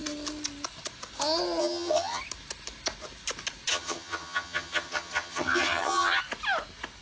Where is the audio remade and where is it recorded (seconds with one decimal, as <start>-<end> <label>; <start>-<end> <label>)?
0.0-1.6 recorded; 1.6-2.2 remade; 2.2-3.7 recorded; 3.7-6.2 remade; 6.2-7.0 recorded